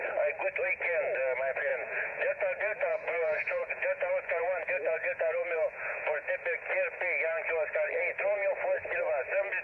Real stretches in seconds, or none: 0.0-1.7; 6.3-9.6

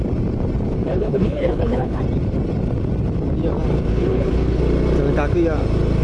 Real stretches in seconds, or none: 0.0-0.8; 2.0-3.9; 4.6-6.0